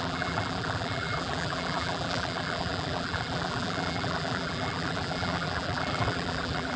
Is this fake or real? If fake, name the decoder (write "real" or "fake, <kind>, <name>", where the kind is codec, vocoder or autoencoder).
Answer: fake, vocoder, BigVGAN v2